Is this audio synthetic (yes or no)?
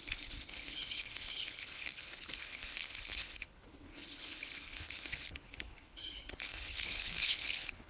yes